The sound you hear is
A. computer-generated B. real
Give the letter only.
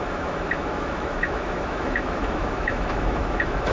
A